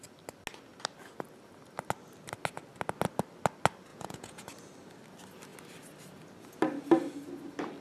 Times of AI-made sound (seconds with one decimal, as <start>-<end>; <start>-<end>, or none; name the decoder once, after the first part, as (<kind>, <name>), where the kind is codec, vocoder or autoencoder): 3.9-4.4 (vocoder, Vocos)